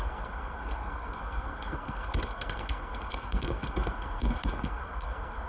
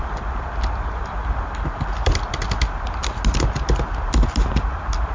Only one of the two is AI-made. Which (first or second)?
first